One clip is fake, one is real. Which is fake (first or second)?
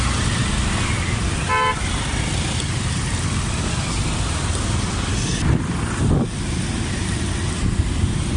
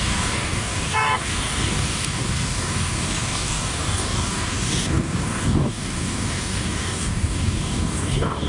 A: second